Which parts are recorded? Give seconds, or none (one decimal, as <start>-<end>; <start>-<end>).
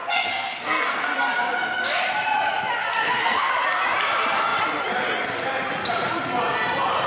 1.2-2.8; 3.5-7.1